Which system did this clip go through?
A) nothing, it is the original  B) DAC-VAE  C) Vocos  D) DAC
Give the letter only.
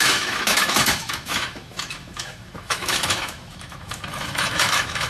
B